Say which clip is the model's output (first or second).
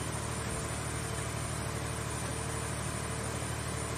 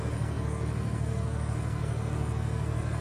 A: second